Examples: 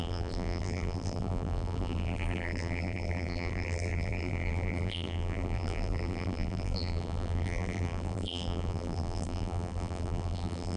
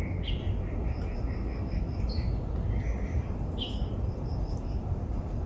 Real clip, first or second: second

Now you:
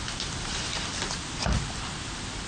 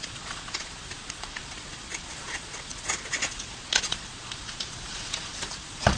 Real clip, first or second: first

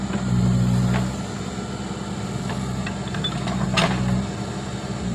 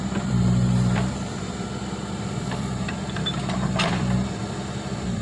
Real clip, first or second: first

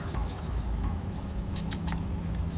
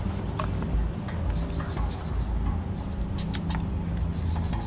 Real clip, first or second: second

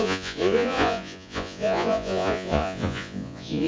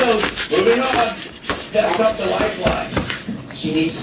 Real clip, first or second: second